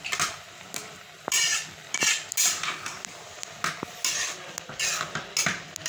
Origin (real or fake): real